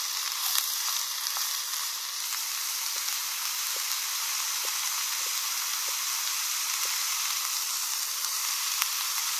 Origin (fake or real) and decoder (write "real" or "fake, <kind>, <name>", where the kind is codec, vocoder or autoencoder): fake, vocoder, BigVGAN v2